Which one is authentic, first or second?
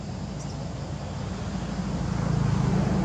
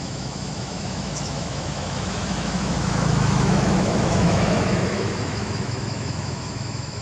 first